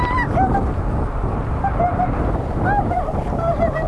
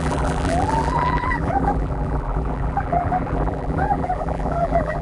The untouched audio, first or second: first